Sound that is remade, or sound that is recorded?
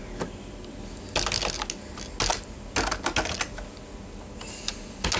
recorded